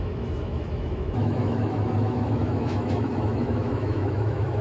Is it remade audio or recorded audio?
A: remade